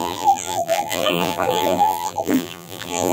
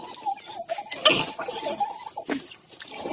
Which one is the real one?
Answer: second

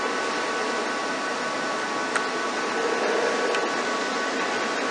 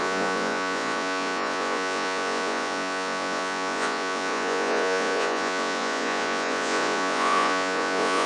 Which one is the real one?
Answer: first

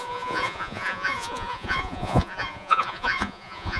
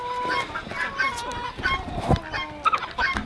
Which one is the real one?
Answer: second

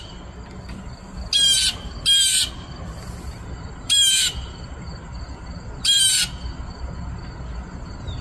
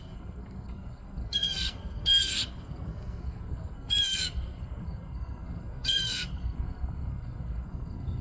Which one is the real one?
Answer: first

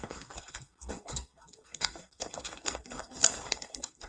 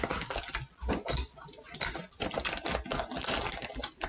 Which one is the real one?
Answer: second